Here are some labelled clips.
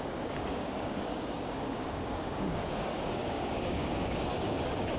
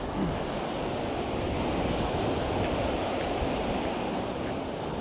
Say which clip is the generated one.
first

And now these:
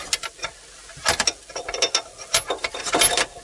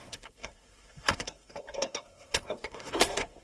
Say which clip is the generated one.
second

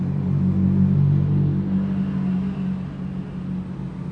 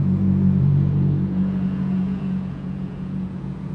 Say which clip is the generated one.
second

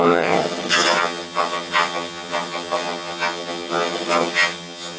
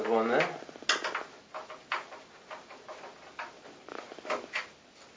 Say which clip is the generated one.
first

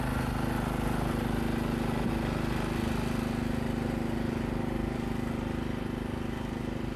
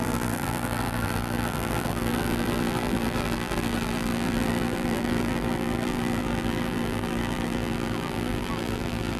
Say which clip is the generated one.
second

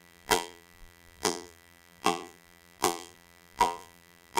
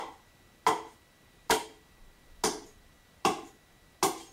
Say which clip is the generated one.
first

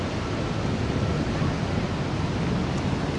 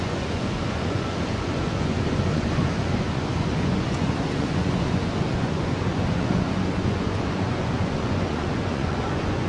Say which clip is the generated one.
second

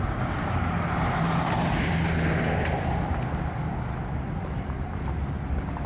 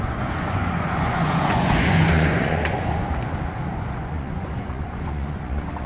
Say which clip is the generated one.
second